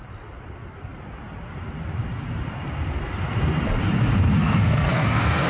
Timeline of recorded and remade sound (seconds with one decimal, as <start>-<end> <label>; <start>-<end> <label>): 0.0-4.4 recorded; 4.4-5.5 remade